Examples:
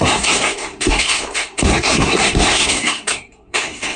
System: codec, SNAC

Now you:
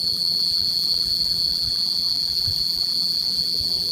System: vocoder, BigVGAN v2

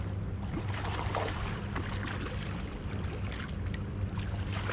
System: none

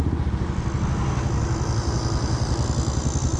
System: none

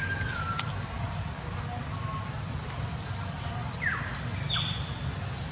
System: none